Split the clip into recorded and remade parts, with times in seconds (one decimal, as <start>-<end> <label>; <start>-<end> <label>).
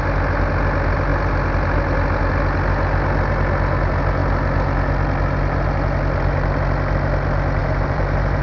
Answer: 0.0-7.6 recorded; 7.6-8.4 remade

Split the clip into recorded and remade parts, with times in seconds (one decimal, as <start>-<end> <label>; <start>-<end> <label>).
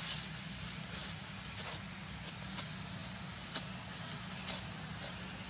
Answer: 0.0-5.5 recorded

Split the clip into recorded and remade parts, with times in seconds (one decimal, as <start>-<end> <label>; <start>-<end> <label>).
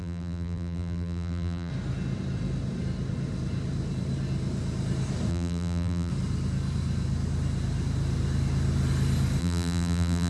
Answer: 0.0-1.7 remade; 1.7-5.3 recorded; 5.3-6.1 remade; 6.1-9.4 recorded; 9.4-10.3 remade